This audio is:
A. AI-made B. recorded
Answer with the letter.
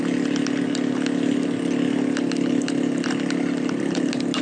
B